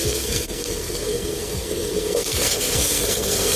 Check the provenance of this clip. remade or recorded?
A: remade